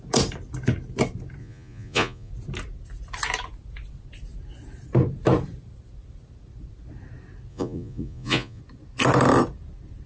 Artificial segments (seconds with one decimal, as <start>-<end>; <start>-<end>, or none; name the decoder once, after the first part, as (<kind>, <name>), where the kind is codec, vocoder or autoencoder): 1.4-2.3 (vocoder, Vocos); 7.5-8.6